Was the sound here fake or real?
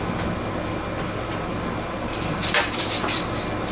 real